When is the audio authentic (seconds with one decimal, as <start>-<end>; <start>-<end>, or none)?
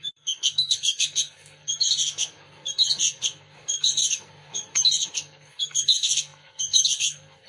none